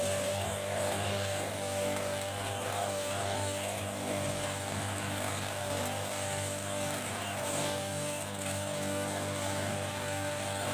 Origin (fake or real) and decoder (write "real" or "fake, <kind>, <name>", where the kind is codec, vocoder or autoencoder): fake, codec, DAC